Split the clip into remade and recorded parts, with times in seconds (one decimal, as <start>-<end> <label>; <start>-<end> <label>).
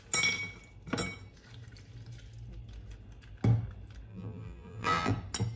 0.0-4.1 recorded; 4.1-5.1 remade; 5.1-5.6 recorded